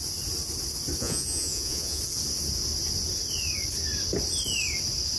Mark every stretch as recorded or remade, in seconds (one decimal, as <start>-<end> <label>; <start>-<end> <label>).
0.0-1.0 recorded; 1.0-2.0 remade; 2.0-5.2 recorded